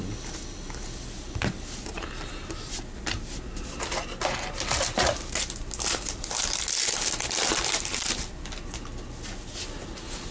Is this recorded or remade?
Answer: recorded